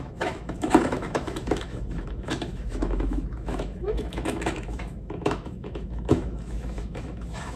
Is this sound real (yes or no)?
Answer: no